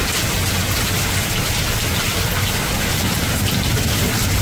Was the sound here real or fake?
real